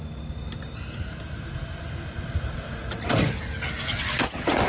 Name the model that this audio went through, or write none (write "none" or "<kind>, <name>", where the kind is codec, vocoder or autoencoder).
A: none